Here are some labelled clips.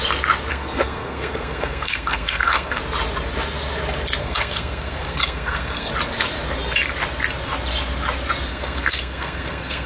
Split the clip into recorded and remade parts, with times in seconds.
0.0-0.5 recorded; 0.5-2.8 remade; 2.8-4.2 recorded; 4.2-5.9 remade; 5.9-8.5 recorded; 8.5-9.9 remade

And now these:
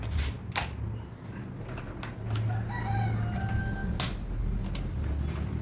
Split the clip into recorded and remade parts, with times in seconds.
0.0-5.6 recorded

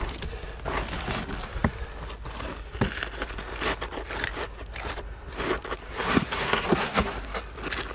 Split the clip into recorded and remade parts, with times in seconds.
0.0-5.8 recorded; 5.8-7.4 remade; 7.4-7.9 recorded

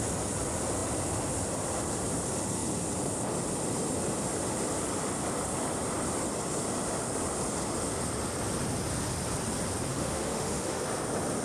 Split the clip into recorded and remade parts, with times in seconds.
0.0-9.9 recorded; 9.9-10.8 remade; 10.8-11.4 recorded

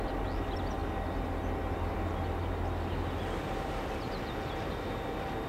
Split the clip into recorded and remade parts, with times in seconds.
0.0-5.5 recorded